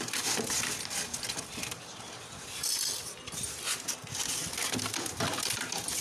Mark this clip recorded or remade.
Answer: recorded